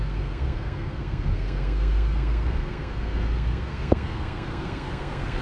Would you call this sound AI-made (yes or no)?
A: yes